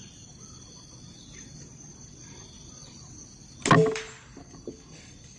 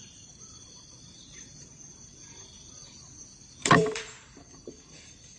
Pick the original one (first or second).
first